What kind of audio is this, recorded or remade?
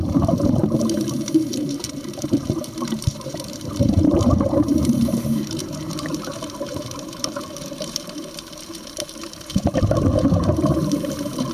remade